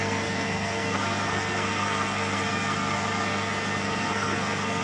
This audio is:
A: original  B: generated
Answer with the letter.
B